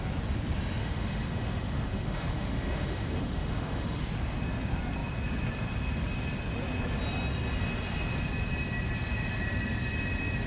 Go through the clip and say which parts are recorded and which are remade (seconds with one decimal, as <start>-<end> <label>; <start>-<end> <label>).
0.0-0.8 recorded; 0.8-4.0 remade; 4.0-10.5 recorded

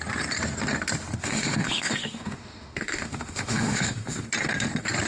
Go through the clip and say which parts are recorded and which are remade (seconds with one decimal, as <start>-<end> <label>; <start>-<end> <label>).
0.0-1.2 recorded; 1.2-4.3 remade; 4.3-5.1 recorded

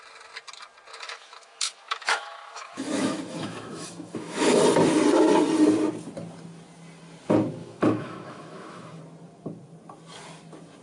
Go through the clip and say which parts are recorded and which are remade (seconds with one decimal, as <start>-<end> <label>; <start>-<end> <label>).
0.0-0.9 recorded; 0.9-4.6 remade; 4.6-7.6 recorded; 7.6-9.0 remade; 9.0-10.8 recorded

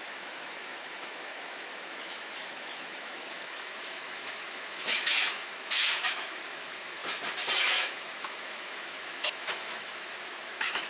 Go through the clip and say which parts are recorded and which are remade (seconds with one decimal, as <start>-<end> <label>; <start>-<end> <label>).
0.0-7.0 remade; 7.0-7.6 recorded; 7.6-10.9 remade

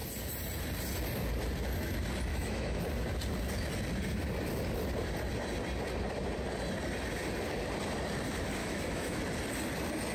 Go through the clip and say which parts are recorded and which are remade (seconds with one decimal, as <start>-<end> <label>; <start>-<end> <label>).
0.0-2.3 recorded; 2.3-2.8 remade; 2.8-8.6 recorded; 8.6-9.2 remade; 9.2-10.1 recorded